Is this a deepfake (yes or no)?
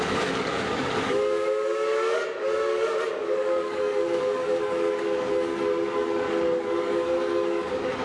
yes